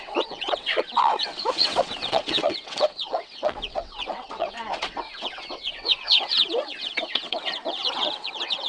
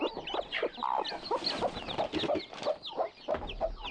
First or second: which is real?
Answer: second